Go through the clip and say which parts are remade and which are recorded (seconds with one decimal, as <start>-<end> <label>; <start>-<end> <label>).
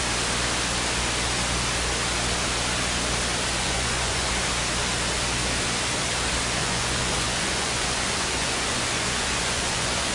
0.0-3.6 recorded; 3.6-4.3 remade; 4.3-6.6 recorded; 6.6-10.1 remade